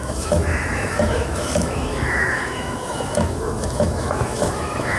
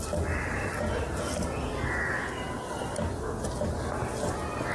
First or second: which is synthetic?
first